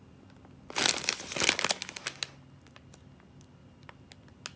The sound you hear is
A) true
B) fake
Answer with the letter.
A